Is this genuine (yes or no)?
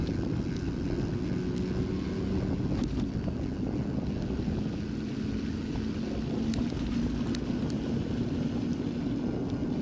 yes